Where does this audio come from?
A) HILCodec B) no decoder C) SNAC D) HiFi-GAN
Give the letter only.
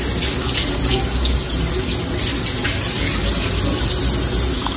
B